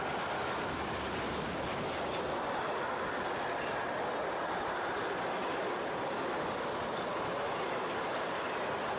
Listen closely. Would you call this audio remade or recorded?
recorded